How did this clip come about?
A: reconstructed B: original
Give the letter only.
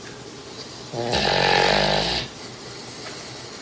B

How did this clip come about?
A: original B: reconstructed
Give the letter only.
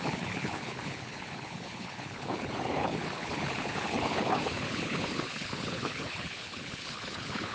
B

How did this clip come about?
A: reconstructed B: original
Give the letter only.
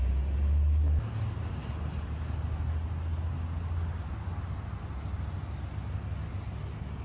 B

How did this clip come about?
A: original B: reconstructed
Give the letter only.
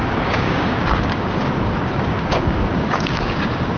B